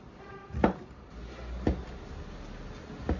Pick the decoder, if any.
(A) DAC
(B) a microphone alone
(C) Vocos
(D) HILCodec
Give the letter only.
B